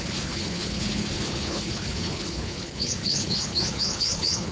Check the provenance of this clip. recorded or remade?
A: remade